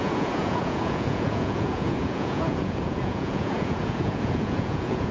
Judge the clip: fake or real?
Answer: fake